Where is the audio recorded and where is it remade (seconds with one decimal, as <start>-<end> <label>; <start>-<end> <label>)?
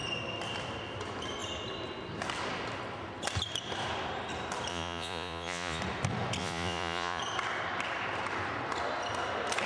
0.0-4.7 recorded; 4.7-5.8 remade; 5.8-6.4 recorded; 6.4-7.2 remade; 7.2-9.7 recorded